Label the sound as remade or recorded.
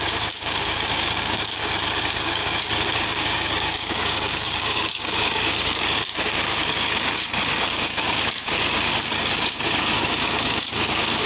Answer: remade